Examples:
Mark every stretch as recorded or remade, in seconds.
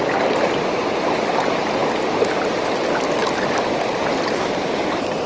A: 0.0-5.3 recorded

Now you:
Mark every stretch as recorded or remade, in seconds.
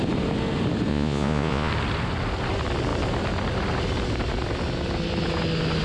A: 0.0-0.9 recorded; 0.9-1.7 remade; 1.7-5.8 recorded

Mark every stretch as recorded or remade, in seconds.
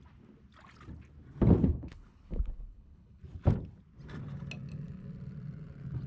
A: 0.0-1.6 recorded; 1.6-3.2 remade; 3.2-6.1 recorded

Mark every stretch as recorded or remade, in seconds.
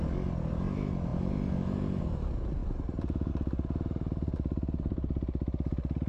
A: 0.0-6.1 recorded